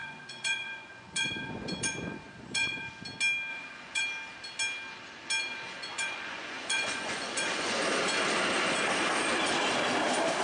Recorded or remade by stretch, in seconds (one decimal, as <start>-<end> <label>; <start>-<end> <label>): 0.0-2.9 remade; 2.9-3.5 recorded; 3.5-4.0 remade; 4.0-5.5 recorded; 5.5-7.8 remade; 7.8-10.4 recorded